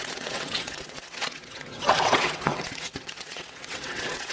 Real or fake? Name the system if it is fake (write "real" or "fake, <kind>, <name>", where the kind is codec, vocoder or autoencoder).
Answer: fake, vocoder, WaveNeXt